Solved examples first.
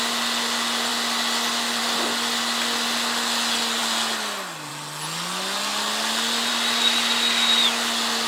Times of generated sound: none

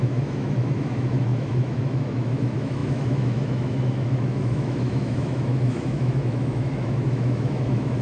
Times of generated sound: 0.0-8.0 (autoencoder, DAC-VAE)

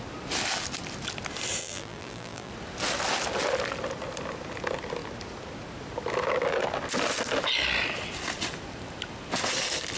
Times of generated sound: 1.6-2.5 (vocoder, BigVGAN v2)

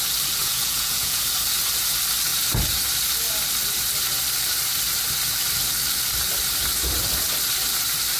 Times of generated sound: 0.4-1.2 (vocoder, Vocos)

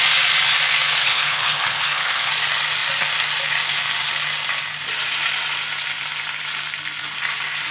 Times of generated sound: 1.0-2.3 (codec, HILCodec)

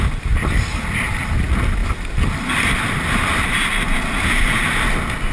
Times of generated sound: none

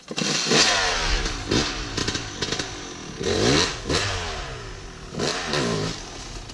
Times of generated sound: none